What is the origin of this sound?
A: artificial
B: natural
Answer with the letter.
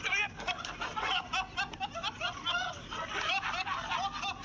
B